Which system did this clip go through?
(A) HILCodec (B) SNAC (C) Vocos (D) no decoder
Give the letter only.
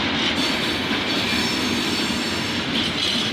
D